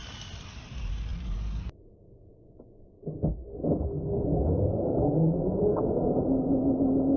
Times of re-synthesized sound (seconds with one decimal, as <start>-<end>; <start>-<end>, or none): none